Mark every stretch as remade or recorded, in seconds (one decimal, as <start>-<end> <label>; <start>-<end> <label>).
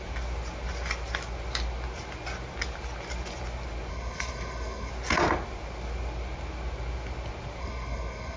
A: 0.0-3.9 recorded; 3.9-4.9 remade; 4.9-7.6 recorded; 7.6-8.4 remade